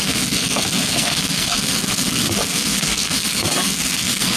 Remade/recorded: remade